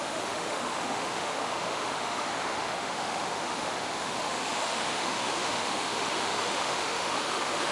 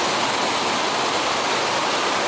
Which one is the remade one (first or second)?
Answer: first